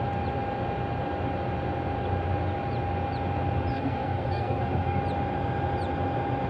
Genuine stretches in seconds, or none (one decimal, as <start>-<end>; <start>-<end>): 0.0-3.7; 5.0-6.5